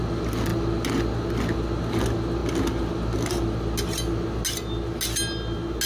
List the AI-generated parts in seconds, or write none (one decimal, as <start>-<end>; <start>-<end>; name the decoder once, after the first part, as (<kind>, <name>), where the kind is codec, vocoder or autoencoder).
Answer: none